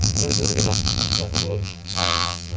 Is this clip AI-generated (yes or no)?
yes